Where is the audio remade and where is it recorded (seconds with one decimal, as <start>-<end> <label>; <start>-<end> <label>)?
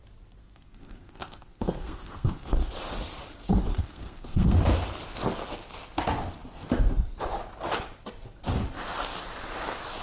0.0-0.4 recorded; 0.4-2.7 remade; 2.7-3.7 recorded; 3.7-4.6 remade; 4.6-10.0 recorded